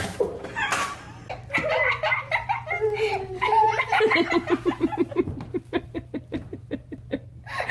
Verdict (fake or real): real